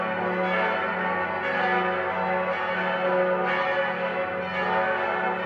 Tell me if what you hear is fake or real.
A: real